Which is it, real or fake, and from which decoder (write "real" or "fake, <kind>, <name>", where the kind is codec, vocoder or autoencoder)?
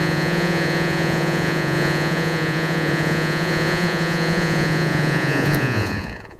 fake, vocoder, Vocos